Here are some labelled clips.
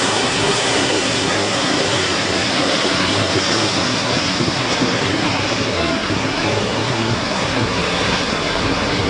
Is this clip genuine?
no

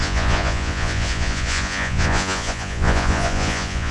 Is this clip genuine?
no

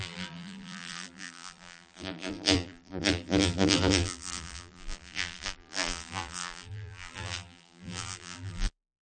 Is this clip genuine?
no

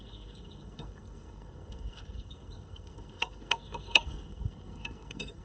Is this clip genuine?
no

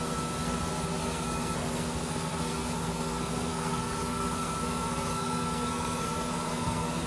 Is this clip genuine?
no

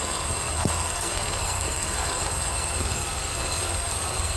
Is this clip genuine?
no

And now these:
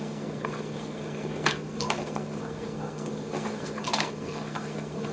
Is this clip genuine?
no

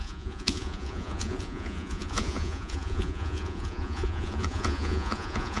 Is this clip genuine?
no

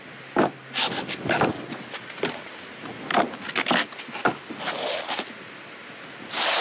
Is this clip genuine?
yes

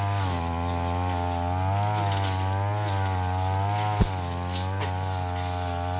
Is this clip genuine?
yes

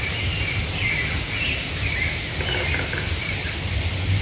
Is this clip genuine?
yes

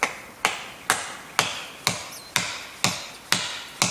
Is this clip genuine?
yes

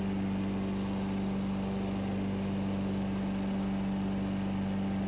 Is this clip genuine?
yes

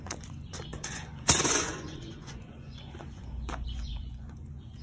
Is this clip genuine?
no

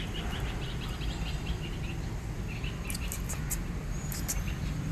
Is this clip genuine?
yes